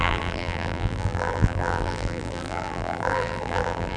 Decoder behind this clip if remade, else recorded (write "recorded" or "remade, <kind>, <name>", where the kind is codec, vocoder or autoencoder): remade, vocoder, BigVGAN v2